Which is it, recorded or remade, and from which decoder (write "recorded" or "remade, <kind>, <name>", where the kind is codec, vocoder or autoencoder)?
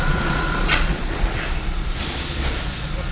remade, vocoder, Vocos